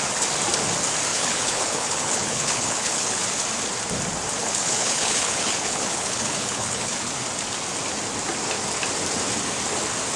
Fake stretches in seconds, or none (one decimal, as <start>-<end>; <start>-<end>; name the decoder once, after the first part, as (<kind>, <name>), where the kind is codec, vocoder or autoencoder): 1.1-3.2 (codec, HILCodec); 4.4-7.1